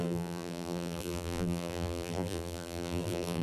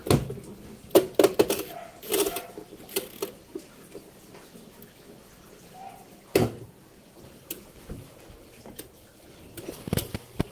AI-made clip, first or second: first